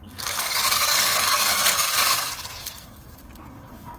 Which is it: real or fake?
fake